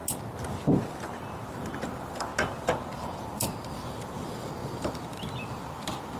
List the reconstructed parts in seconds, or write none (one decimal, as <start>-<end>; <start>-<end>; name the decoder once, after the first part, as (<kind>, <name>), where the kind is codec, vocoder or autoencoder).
1.4-2.3 (vocoder, BigVGAN v2); 3.2-6.2